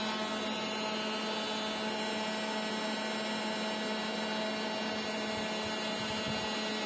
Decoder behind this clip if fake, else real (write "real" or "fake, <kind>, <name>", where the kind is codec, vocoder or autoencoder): real